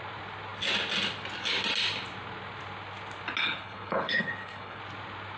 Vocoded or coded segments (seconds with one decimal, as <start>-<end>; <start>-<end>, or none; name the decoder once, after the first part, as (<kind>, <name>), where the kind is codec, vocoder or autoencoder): 3.4-4.8 (codec, HILCodec)